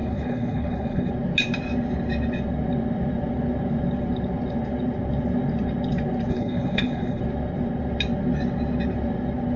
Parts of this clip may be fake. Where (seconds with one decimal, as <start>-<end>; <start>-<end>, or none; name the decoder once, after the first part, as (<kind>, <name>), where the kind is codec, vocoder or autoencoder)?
0.0-1.1 (codec, HILCodec); 6.3-7.2